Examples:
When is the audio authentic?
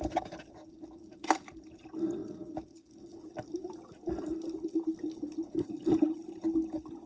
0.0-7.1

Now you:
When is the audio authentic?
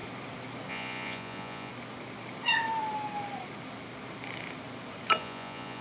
0.0-0.7; 1.7-5.2